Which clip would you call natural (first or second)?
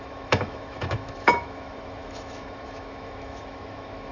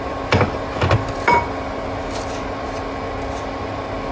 second